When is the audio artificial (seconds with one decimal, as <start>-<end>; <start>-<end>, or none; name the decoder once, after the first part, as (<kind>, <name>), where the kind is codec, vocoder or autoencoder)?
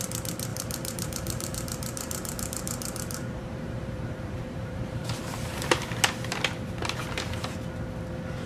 0.5-5.2 (vocoder, BigVGAN v2)